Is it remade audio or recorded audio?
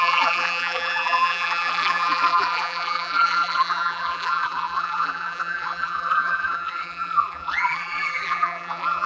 remade